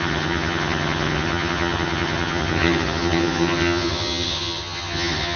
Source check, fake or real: fake